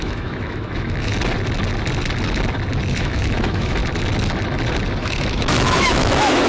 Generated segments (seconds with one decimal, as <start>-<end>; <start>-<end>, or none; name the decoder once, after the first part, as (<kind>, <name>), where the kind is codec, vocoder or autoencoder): 0.0-1.1 (autoencoder, DAC-VAE); 3.0-3.8; 5.0-6.5